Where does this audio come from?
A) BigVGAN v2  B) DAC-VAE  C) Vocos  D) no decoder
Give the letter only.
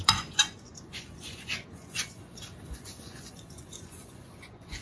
C